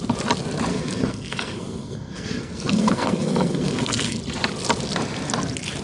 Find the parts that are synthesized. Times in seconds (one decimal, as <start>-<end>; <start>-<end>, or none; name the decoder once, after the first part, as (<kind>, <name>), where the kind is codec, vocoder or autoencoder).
0.7-4.2 (codec, SNAC)